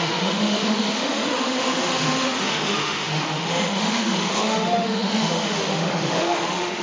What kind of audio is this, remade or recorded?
remade